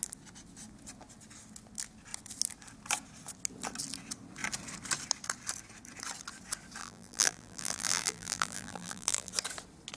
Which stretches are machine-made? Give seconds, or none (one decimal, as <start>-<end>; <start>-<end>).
6.8-9.3